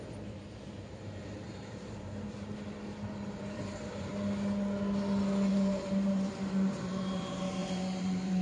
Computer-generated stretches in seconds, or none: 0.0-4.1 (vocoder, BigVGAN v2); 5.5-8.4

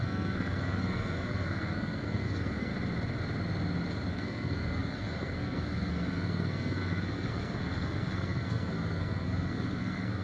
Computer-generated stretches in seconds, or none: 0.0-2.7 (codec, SNAC); 4.1-10.2

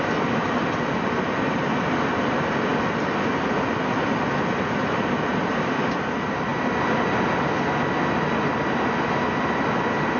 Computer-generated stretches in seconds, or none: none

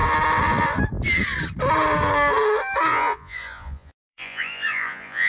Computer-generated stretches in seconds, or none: 2.9-5.3 (vocoder, Vocos)

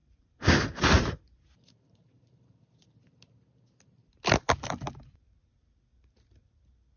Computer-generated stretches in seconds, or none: 0.0-2.5 (vocoder, BigVGAN v2)

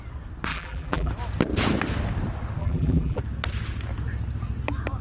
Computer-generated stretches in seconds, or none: 0.5-1.1 (vocoder, BigVGAN v2); 2.6-3.2